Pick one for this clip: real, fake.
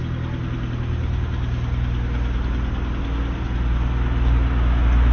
real